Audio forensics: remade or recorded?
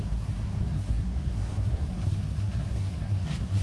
remade